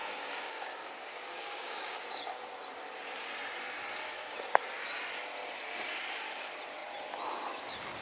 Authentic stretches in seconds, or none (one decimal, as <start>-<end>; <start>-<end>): 2.3-8.0